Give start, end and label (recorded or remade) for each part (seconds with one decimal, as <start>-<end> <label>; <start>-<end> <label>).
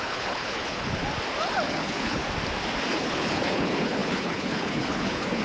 0.0-1.0 remade; 1.0-1.7 recorded; 1.7-2.2 remade; 2.2-2.9 recorded; 2.9-5.4 remade